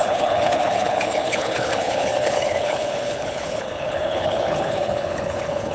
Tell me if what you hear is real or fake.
fake